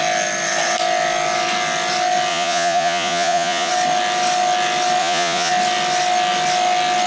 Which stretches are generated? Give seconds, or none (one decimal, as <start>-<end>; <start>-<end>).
2.3-3.7; 5.0-5.5